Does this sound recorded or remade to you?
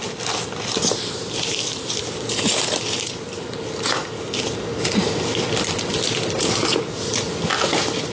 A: recorded